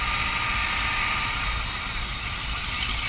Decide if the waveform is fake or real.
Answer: real